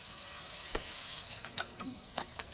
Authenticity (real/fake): fake